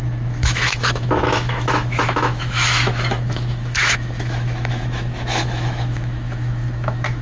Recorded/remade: remade